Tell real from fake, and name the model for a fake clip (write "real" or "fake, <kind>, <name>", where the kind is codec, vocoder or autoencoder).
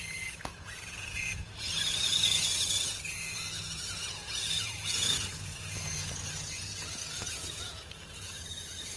fake, vocoder, Vocos